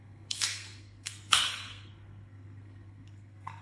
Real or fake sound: fake